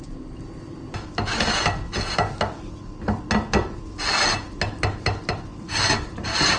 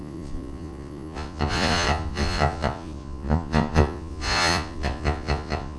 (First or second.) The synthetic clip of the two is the second